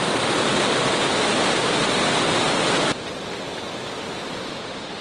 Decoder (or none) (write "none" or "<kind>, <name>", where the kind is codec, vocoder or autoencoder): vocoder, BigVGAN v2